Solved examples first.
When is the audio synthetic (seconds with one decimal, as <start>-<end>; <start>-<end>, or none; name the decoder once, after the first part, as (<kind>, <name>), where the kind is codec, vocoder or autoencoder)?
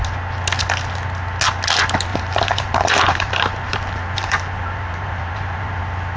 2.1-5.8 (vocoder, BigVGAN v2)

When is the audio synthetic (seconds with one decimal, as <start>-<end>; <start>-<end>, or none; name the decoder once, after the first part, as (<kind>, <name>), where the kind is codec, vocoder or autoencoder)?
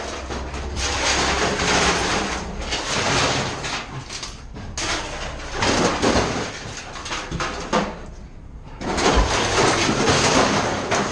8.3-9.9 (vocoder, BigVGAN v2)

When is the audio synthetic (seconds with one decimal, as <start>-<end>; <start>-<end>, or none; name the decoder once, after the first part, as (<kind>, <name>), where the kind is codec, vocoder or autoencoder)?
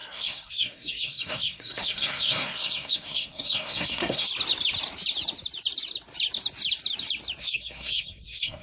0.0-4.3 (codec, SNAC); 7.4-8.6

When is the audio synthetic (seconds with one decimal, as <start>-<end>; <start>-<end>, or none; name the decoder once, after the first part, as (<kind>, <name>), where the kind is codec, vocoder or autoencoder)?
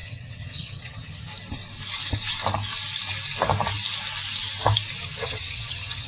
0.0-1.3 (vocoder, HiFi-GAN); 5.0-6.1